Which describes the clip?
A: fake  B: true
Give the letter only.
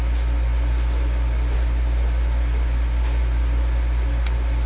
B